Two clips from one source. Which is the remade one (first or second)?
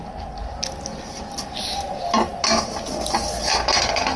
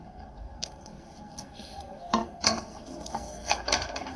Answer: second